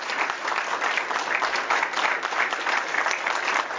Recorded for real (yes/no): yes